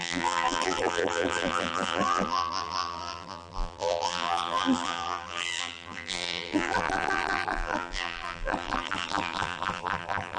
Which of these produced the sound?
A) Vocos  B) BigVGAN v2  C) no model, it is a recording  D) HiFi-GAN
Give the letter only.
B